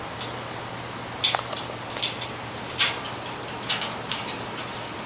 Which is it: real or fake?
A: real